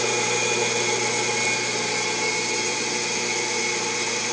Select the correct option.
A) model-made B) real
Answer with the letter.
B